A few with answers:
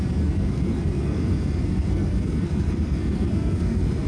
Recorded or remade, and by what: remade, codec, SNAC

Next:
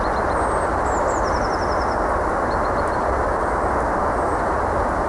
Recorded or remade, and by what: recorded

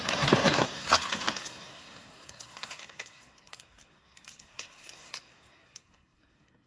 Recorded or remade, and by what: remade, codec, SNAC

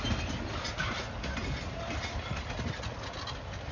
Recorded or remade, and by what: recorded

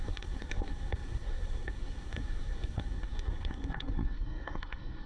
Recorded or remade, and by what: remade, codec, SNAC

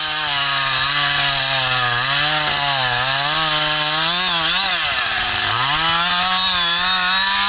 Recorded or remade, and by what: recorded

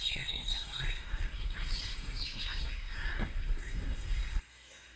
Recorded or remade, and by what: remade, codec, SNAC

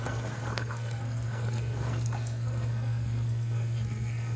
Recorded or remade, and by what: remade, codec, SNAC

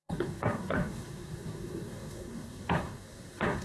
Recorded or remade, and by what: remade, codec, SNAC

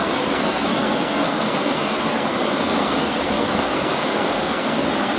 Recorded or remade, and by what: remade, codec, SNAC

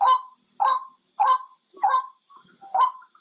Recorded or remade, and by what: recorded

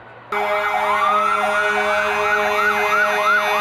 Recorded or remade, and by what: recorded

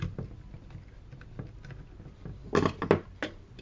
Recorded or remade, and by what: recorded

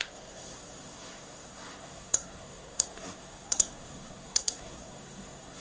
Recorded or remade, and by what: remade, codec, SNAC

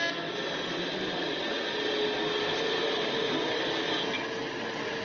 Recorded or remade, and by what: recorded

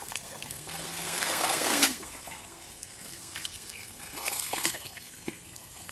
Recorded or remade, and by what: remade, codec, SNAC